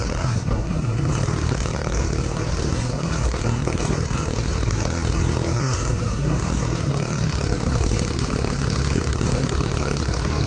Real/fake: fake